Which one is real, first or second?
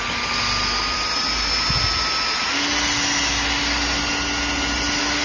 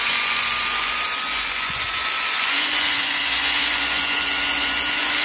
first